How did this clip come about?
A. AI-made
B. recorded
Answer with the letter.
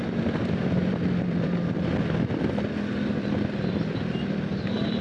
A